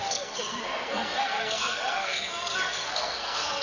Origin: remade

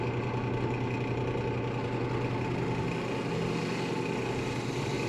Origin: recorded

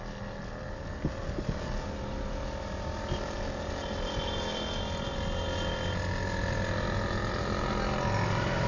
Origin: recorded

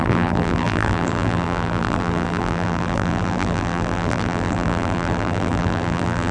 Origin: remade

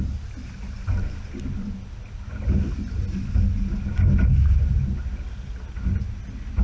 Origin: recorded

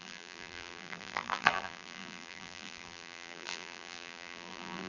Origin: remade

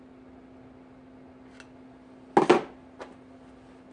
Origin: recorded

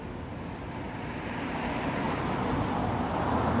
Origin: recorded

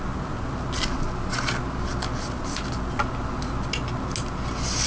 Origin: recorded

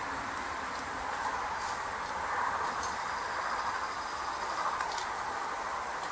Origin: recorded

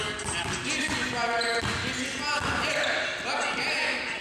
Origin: recorded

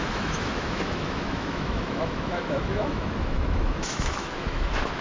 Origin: remade